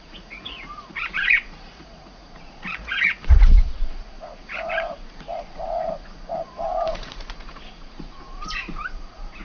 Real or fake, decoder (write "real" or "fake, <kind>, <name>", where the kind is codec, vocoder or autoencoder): fake, vocoder, Vocos